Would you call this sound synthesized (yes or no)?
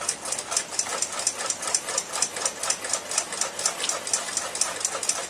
no